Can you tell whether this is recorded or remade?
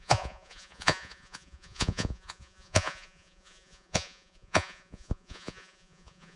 remade